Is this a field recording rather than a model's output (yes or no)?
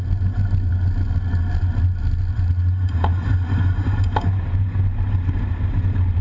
yes